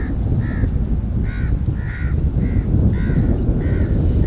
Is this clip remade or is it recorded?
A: recorded